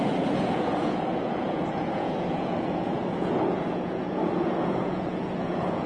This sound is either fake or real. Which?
fake